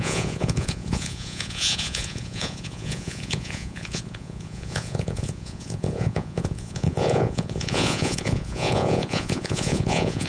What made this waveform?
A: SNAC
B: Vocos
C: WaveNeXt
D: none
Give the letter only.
B